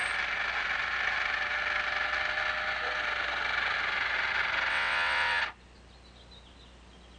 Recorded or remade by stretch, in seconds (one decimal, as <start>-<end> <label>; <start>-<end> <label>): 0.0-4.7 recorded; 4.7-5.4 remade; 5.4-7.2 recorded